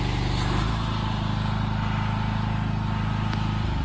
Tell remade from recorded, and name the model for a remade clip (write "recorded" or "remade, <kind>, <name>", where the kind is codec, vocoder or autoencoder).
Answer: recorded